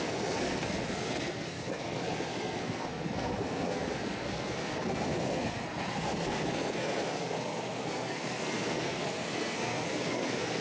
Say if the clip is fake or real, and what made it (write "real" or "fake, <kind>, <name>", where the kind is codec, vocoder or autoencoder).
fake, codec, SNAC